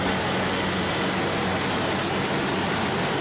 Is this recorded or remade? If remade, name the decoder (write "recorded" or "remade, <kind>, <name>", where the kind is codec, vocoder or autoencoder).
recorded